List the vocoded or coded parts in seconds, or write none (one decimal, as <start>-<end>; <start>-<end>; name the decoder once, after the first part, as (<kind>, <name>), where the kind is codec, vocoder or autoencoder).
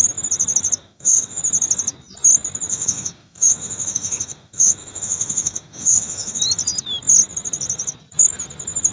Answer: 0.8-1.4 (autoencoder, DAC-VAE); 2.7-6.4